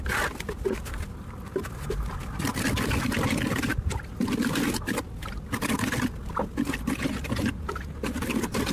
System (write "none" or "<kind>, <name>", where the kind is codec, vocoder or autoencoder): none